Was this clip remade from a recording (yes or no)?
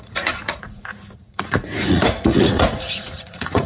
yes